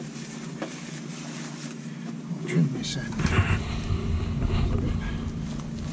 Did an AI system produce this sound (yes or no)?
no